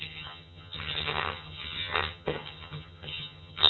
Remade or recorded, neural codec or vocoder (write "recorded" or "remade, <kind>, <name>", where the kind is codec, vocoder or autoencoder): remade, vocoder, HiFi-GAN